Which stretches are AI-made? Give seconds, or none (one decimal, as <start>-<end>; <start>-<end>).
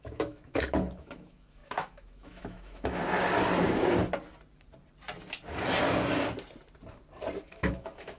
0.0-3.0; 7.4-8.2